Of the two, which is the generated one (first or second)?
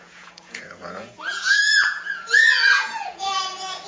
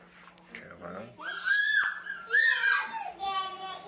first